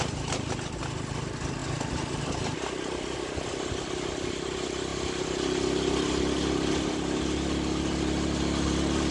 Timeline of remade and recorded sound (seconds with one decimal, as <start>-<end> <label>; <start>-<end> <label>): 0.0-9.1 recorded

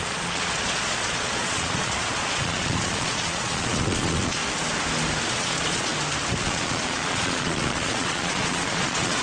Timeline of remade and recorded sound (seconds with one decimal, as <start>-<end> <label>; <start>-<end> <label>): 0.0-4.4 remade; 4.4-5.3 recorded; 5.3-5.9 remade; 5.9-6.4 recorded; 6.4-9.2 remade

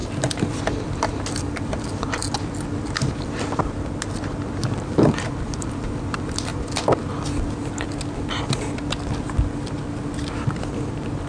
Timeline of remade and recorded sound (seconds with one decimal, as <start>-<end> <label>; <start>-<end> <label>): 0.0-0.6 recorded; 0.6-2.2 remade; 2.2-5.3 recorded; 5.3-6.5 remade; 6.5-10.9 recorded; 10.9-11.3 remade

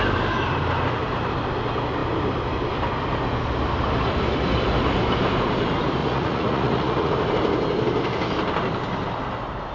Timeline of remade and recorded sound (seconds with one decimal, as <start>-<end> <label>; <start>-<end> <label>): 0.0-6.0 recorded; 6.0-7.1 remade; 7.1-9.7 recorded

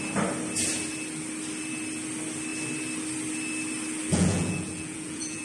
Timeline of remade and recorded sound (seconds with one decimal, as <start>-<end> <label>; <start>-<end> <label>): 0.0-4.1 recorded; 4.1-5.4 remade

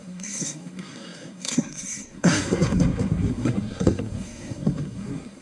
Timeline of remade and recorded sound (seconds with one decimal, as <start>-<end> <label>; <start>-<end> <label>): 0.0-5.4 remade